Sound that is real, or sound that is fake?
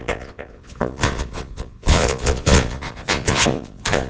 fake